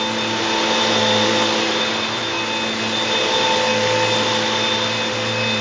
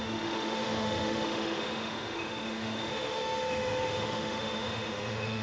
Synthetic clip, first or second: second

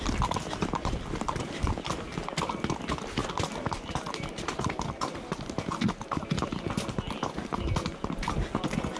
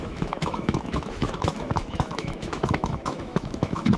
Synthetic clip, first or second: second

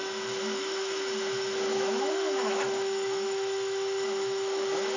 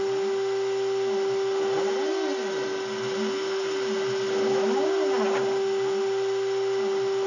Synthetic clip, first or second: first